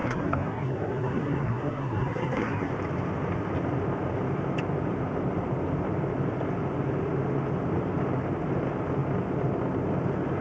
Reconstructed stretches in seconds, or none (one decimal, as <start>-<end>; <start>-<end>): 0.0-2.7